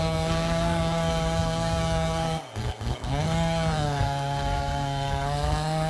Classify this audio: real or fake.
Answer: fake